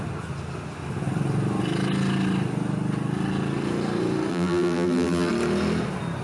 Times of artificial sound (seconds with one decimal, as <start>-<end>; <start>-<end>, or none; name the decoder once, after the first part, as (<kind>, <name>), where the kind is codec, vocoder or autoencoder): 4.3-5.3 (vocoder, BigVGAN v2)